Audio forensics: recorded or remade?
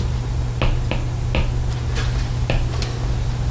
recorded